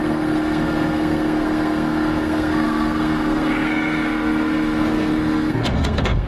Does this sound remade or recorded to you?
remade